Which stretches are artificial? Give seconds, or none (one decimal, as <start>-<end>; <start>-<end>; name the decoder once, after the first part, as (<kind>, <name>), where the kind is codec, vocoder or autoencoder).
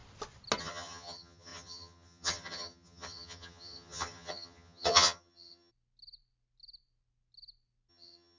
0.6-5.7 (vocoder, HiFi-GAN); 7.9-8.4